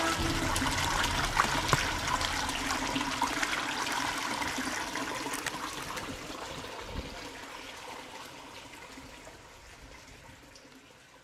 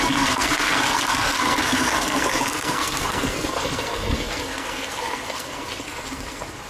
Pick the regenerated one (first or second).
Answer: second